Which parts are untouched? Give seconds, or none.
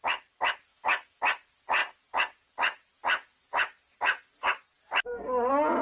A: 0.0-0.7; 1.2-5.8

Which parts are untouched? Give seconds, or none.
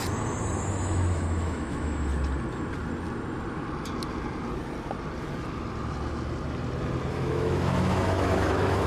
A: 0.0-0.8; 2.1-7.1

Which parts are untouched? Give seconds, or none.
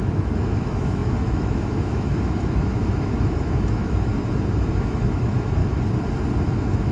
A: 4.1-4.7; 5.6-6.4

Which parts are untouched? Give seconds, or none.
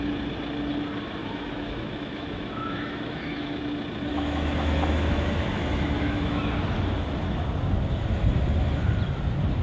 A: 0.0-1.2; 3.6-4.1; 6.4-9.6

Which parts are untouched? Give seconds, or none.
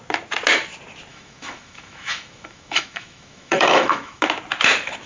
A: 0.0-1.1; 4.2-5.1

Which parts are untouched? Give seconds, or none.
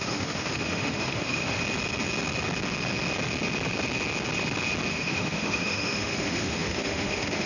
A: 1.6-4.9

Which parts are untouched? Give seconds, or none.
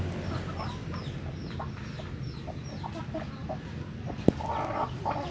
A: 0.0-5.3